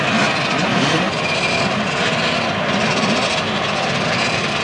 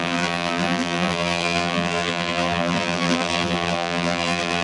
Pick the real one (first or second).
first